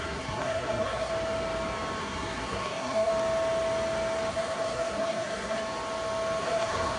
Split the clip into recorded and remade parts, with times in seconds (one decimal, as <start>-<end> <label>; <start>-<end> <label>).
0.0-1.1 remade; 1.1-2.0 recorded; 2.0-3.1 remade; 3.1-4.3 recorded; 4.3-5.6 remade; 5.6-6.4 recorded; 6.4-7.0 remade